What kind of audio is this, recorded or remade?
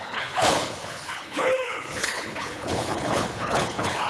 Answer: remade